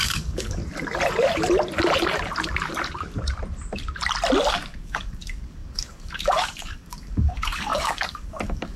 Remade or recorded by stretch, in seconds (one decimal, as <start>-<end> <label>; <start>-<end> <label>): 0.0-0.6 remade; 0.6-4.5 recorded; 4.5-8.8 remade